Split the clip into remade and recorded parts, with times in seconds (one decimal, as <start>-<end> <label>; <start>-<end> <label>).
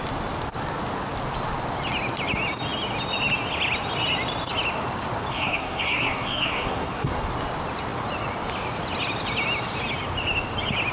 0.0-5.3 recorded; 5.3-7.3 remade; 7.3-10.9 recorded